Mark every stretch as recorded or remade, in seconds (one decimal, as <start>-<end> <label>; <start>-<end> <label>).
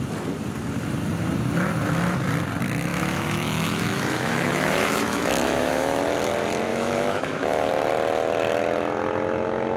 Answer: 0.0-2.9 recorded; 2.9-6.0 remade; 6.0-6.7 recorded; 6.7-7.7 remade; 7.7-9.8 recorded